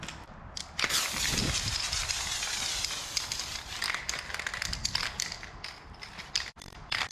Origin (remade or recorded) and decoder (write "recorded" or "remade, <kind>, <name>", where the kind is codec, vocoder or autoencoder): recorded